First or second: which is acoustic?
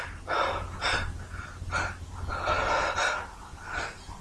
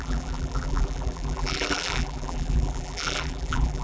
first